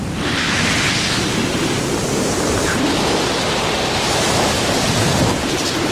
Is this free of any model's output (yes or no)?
no